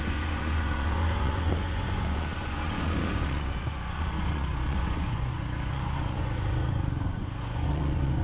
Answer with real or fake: fake